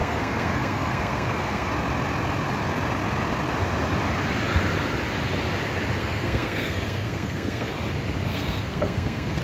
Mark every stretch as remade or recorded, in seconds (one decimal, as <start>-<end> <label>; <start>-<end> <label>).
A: 0.0-1.7 remade; 1.7-6.0 recorded; 6.0-7.7 remade; 7.7-8.3 recorded; 8.3-9.4 remade